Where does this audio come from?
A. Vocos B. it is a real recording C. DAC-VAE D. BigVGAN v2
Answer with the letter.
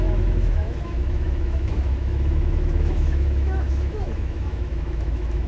C